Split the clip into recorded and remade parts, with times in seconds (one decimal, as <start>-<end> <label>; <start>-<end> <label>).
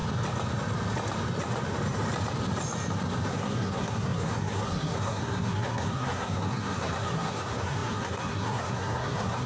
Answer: 0.0-3.3 recorded; 3.3-9.5 remade